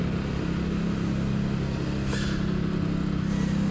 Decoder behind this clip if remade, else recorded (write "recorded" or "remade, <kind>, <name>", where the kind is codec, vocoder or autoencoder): recorded